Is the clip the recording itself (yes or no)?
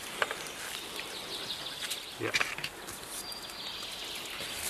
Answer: yes